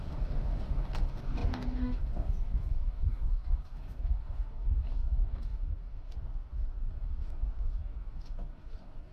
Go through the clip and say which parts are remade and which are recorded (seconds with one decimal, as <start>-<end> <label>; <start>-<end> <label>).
0.0-9.1 remade